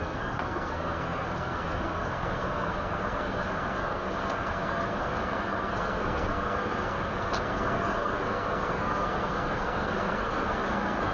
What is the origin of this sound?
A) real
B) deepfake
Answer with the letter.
B